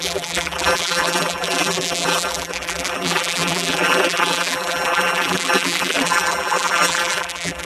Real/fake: fake